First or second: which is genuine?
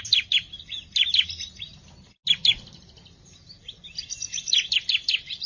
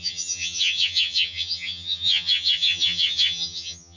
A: first